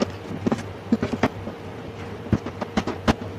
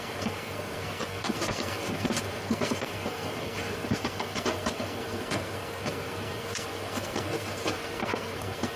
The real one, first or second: first